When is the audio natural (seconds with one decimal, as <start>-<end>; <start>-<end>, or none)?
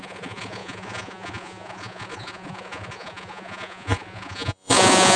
none